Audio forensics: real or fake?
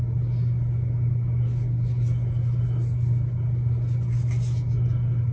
real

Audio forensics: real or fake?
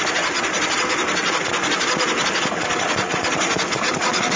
real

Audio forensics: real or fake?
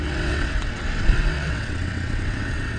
fake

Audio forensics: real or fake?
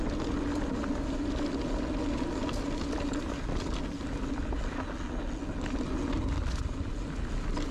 real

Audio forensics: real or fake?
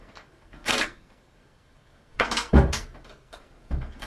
fake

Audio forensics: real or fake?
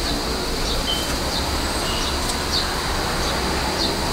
real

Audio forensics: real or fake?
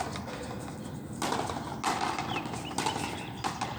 real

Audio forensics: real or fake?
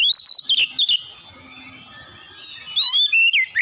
real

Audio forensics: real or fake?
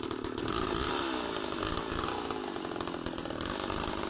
real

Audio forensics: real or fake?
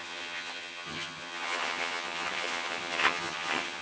fake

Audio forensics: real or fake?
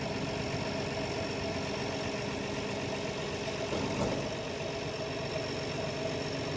real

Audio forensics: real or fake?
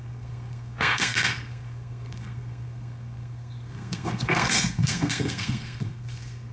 fake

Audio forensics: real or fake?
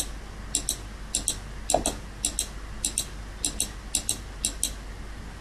real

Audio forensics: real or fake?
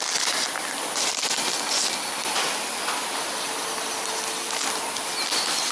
real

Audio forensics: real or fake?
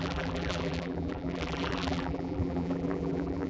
fake